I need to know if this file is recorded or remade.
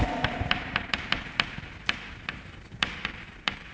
remade